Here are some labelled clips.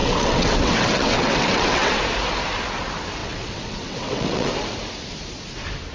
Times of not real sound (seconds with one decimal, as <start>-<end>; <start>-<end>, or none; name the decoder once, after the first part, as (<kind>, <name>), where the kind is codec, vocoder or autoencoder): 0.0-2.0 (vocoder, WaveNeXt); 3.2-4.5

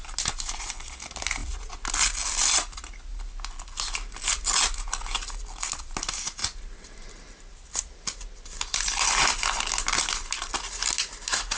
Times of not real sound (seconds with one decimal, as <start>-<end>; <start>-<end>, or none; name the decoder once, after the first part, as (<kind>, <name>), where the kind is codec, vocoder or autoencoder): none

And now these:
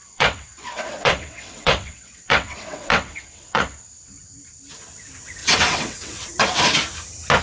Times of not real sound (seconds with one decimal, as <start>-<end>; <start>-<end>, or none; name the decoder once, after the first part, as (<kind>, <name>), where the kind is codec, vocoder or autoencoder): 0.0-3.7 (vocoder, WaveNeXt); 5.4-6.6

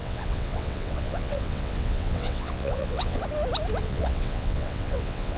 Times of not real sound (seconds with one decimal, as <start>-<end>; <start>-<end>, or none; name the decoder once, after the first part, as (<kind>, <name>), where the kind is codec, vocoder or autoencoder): 0.0-3.2 (vocoder, WaveNeXt); 3.8-5.4

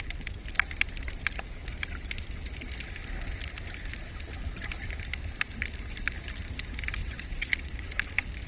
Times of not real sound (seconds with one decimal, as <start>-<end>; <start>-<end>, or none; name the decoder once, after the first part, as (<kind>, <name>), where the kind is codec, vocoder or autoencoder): 7.0-7.8 (vocoder, WaveNeXt)

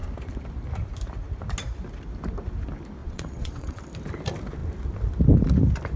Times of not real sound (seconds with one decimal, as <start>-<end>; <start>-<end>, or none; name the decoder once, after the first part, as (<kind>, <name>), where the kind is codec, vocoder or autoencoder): 3.0-3.8 (vocoder, WaveNeXt)

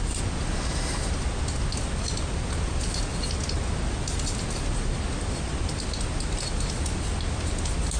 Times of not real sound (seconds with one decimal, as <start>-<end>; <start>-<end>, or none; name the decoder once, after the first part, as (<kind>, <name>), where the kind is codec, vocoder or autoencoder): none